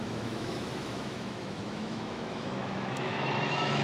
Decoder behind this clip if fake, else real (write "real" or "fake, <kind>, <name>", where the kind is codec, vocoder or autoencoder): fake, autoencoder, DAC-VAE